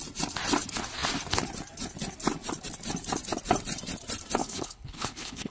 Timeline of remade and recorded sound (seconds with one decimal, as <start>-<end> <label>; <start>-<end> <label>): 0.0-4.4 recorded; 4.4-5.5 remade